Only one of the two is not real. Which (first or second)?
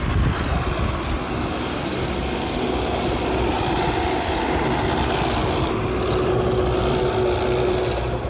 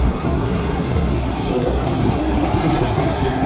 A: second